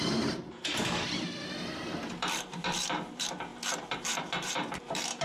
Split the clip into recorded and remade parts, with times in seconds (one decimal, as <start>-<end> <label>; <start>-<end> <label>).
0.0-5.2 remade

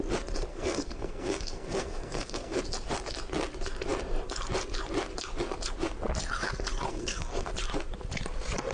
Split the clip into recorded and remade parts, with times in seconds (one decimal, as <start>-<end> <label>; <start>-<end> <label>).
0.0-0.5 recorded; 0.5-2.6 remade; 2.6-6.9 recorded; 6.9-7.5 remade; 7.5-8.7 recorded

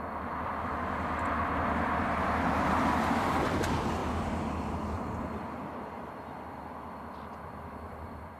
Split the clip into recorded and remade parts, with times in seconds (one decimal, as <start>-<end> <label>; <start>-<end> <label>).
0.0-8.4 recorded

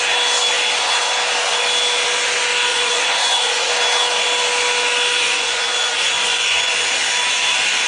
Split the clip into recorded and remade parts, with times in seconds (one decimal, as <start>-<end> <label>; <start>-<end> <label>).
0.0-2.7 recorded; 2.7-3.7 remade; 3.7-5.2 recorded; 5.2-6.7 remade; 6.7-7.9 recorded

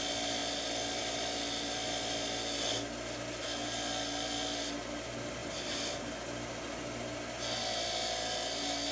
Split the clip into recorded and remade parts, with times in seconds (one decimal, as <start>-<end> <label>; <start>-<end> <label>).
0.0-5.4 recorded; 5.4-6.0 remade; 6.0-8.9 recorded

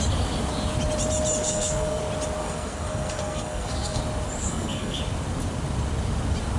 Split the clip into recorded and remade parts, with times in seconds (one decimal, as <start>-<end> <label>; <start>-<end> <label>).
0.0-1.4 recorded; 1.4-2.0 remade; 2.0-2.4 recorded; 2.4-4.0 remade; 4.0-4.4 recorded; 4.4-5.0 remade; 5.0-6.6 recorded

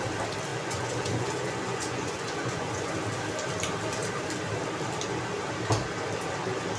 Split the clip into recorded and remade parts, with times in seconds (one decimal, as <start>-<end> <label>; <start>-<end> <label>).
0.0-0.5 recorded; 0.5-2.9 remade; 2.9-6.8 recorded